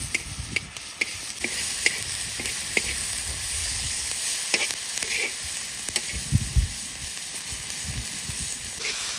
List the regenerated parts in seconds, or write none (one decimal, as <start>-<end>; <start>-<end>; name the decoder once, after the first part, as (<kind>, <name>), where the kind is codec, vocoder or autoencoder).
3.6-4.1 (codec, HILCodec)